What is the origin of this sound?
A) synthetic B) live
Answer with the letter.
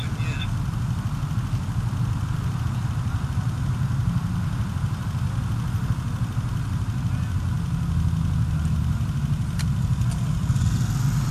B